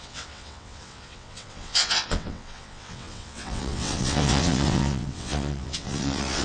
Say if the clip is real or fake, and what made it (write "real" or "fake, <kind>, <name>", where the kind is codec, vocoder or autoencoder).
fake, vocoder, WaveNeXt